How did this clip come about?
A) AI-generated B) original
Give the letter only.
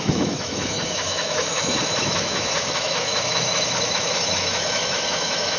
A